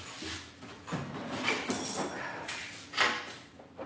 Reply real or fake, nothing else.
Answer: real